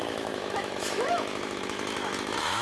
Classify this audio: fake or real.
fake